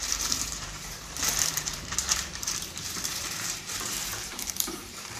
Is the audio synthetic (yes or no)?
yes